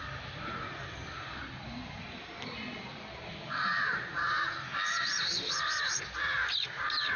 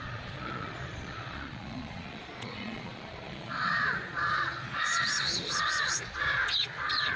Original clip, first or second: first